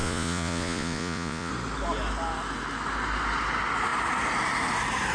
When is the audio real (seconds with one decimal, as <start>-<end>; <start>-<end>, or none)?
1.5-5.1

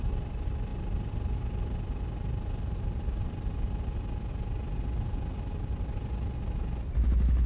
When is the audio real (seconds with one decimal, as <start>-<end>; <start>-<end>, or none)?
0.0-7.5

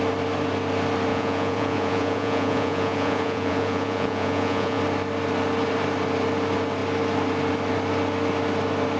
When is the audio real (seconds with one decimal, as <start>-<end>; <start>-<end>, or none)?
0.0-1.1; 4.8-9.0